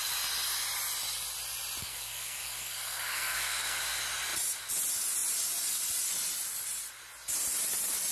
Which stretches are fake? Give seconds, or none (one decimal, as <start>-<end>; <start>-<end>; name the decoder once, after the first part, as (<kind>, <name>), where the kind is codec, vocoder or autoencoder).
1.8-3.8 (codec, SNAC)